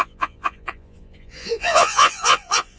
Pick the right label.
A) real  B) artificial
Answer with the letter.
B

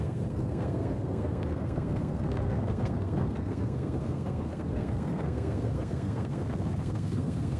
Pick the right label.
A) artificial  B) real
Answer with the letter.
A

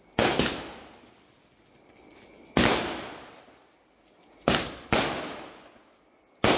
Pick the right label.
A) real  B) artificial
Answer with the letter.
A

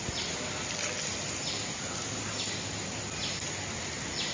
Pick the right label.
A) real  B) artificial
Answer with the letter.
A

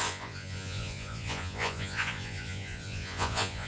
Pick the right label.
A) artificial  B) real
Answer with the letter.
A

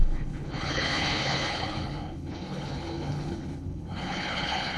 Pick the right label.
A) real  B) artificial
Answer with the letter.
B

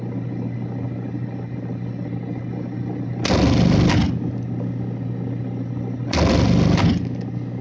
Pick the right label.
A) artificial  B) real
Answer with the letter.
B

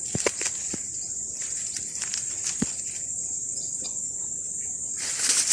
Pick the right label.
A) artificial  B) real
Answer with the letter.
B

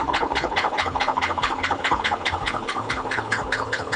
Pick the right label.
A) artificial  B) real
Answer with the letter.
A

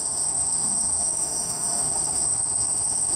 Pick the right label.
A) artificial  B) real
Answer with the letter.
A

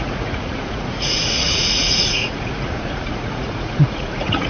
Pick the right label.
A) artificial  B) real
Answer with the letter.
A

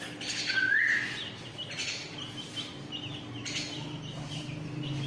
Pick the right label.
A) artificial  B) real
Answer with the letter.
B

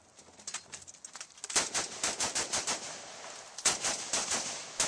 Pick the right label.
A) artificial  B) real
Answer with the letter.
B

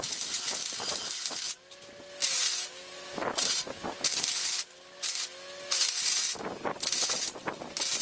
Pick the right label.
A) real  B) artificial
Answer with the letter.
A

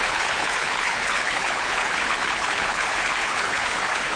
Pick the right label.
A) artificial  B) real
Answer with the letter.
A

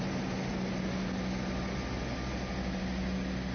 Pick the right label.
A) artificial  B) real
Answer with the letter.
B